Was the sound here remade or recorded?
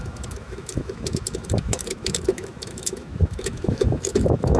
remade